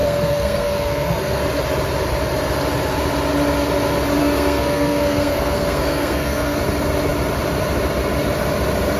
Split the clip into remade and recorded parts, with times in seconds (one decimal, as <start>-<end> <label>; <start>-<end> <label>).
0.0-1.4 remade; 1.4-4.2 recorded; 4.2-6.6 remade; 6.6-9.0 recorded